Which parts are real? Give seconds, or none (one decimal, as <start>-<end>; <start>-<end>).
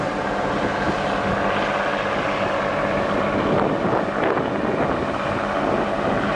0.0-6.4